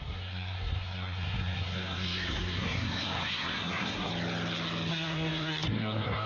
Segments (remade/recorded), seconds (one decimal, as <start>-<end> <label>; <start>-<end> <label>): 0.0-4.1 remade; 4.1-4.9 recorded; 4.9-6.3 remade